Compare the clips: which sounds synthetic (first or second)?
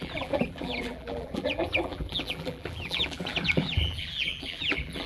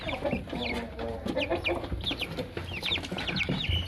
first